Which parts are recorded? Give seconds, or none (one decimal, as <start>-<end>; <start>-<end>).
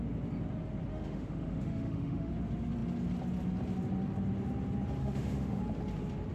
0.0-0.9; 2.3-5.0; 5.6-6.3